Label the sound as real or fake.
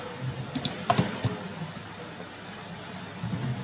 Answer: real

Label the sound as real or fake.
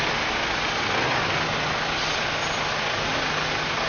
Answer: real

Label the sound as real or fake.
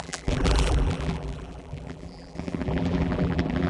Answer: fake